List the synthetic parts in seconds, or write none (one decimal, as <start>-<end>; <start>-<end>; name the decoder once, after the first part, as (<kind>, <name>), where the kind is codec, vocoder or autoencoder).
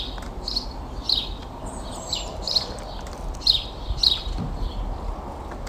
1.4-4.8 (vocoder, BigVGAN v2)